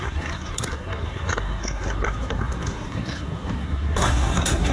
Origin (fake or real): fake